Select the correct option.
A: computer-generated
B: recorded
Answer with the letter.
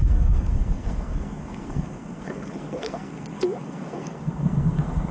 A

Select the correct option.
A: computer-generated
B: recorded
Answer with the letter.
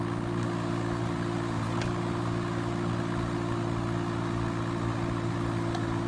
B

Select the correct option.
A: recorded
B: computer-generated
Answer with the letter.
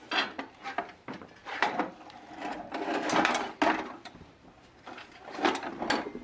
A